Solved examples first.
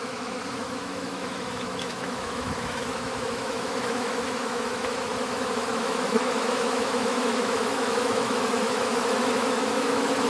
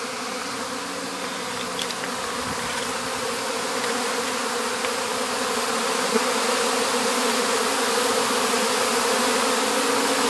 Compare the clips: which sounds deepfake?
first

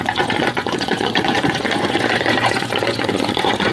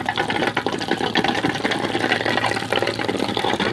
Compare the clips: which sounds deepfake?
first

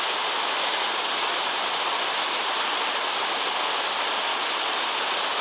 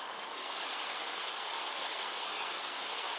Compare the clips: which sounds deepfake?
second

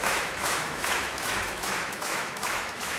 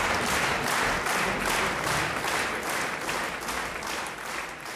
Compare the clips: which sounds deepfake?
first